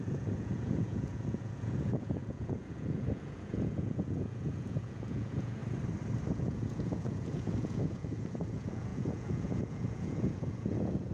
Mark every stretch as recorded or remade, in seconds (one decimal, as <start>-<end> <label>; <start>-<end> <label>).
0.0-5.6 remade; 5.6-6.3 recorded; 6.3-11.1 remade